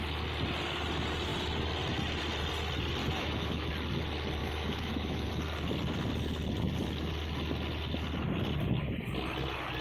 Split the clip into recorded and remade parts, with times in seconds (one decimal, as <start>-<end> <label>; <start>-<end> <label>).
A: 0.0-3.0 recorded; 3.0-3.7 remade; 3.7-4.4 recorded; 4.4-5.3 remade; 5.3-9.8 recorded